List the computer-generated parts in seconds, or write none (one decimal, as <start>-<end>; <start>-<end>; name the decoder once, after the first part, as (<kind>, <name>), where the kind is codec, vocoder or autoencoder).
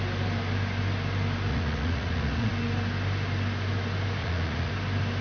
1.5-2.5 (vocoder, Vocos); 4.2-4.7